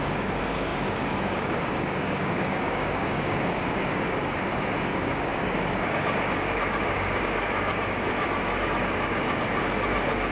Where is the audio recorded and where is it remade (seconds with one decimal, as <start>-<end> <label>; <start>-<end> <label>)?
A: 0.0-10.3 remade